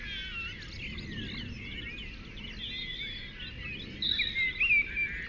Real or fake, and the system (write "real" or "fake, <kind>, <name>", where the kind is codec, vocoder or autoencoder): real